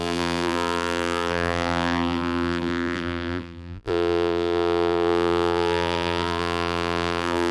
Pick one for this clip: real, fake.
fake